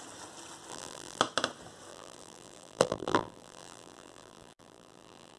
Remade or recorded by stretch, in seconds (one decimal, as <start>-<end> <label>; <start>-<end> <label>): 0.0-0.7 recorded; 0.7-1.2 remade; 1.2-1.9 recorded; 1.9-5.4 remade